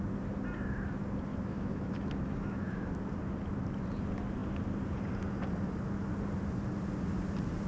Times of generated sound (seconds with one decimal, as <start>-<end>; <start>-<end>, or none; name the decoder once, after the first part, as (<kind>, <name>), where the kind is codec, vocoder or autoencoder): 1.3-2.9 (autoencoder, DAC-VAE)